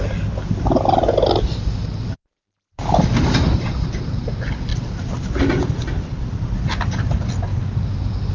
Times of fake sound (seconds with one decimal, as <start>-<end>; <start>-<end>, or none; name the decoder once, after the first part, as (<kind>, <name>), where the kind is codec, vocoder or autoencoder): 2.2-4.3 (vocoder, BigVGAN v2); 4.7-5.4; 7.5-8.3